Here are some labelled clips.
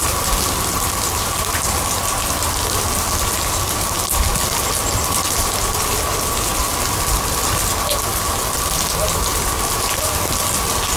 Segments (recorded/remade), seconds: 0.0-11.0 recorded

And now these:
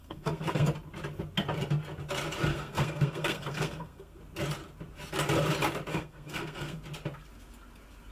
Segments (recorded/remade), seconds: 0.0-0.7 remade; 0.7-2.5 recorded; 2.5-4.2 remade; 4.2-5.9 recorded; 5.9-6.8 remade; 6.8-8.1 recorded